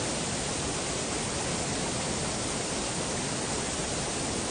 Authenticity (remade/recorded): recorded